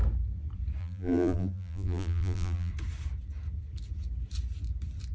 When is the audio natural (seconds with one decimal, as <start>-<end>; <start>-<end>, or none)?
0.0-0.8; 2.7-5.1